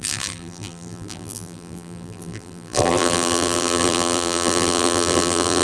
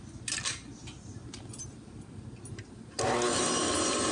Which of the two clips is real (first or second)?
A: second